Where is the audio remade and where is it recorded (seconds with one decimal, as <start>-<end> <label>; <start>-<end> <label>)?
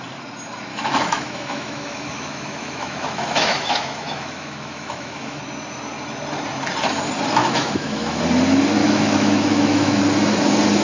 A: 0.0-0.7 recorded; 0.7-5.4 remade; 5.4-7.4 recorded; 7.4-8.2 remade; 8.2-8.8 recorded; 8.8-10.0 remade; 10.0-10.8 recorded